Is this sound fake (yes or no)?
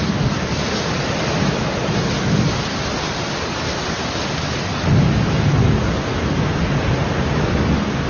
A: no